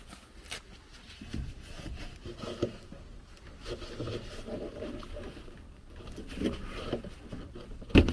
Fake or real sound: real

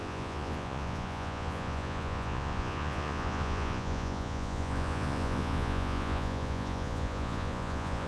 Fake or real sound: fake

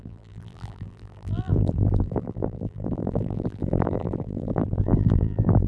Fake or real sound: fake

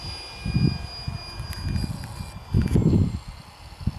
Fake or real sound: real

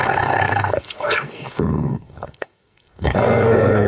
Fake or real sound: fake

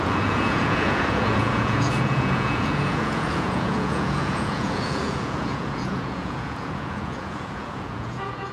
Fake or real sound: fake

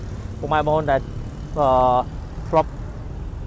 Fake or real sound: real